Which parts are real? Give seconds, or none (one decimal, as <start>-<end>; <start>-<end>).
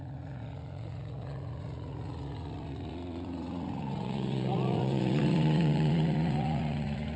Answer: none